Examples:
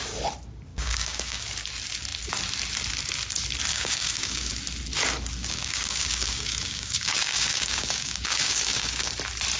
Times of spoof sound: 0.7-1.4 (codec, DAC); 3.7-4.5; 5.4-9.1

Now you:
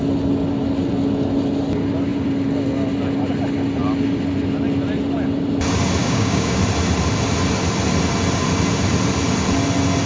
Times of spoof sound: 6.0-6.6 (codec, DAC)

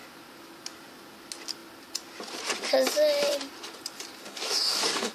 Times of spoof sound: 4.2-5.1 (codec, DAC)

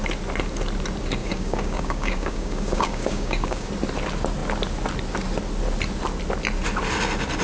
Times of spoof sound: 1.2-3.7 (codec, DAC)